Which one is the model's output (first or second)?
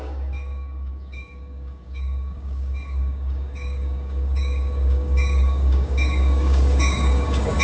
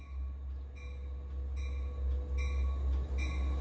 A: first